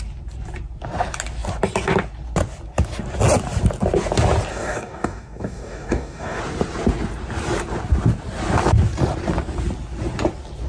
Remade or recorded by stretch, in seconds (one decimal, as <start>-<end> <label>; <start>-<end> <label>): 0.0-4.5 recorded; 4.5-6.4 remade; 6.4-10.7 recorded